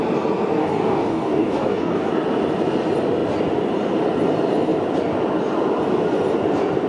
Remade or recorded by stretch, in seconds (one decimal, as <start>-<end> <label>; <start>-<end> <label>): 0.0-0.6 recorded; 0.6-2.1 remade; 2.1-6.9 recorded